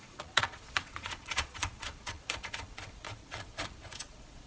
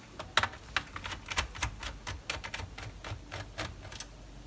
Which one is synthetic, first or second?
first